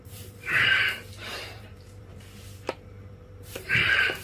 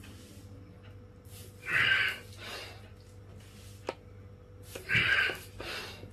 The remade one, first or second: first